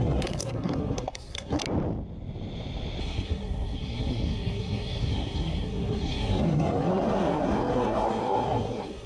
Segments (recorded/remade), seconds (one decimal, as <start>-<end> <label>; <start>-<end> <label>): 0.0-1.6 remade; 1.6-3.0 recorded; 3.0-9.1 remade